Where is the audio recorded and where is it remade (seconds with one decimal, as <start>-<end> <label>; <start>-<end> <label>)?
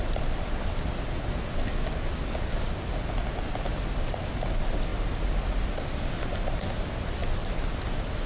0.0-8.3 recorded